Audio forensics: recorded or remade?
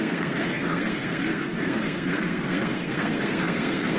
remade